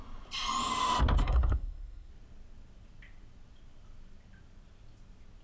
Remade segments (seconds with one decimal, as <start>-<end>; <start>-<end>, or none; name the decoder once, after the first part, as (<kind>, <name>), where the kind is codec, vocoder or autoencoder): 1.2-2.1 (codec, SNAC)